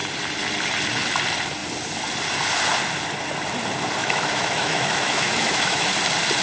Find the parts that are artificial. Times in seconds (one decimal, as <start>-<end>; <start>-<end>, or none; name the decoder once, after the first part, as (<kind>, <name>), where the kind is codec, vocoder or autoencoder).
4.0-5.9 (autoencoder, DAC-VAE)